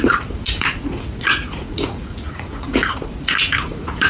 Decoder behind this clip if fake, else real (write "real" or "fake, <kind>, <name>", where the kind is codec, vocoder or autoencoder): fake, vocoder, Vocos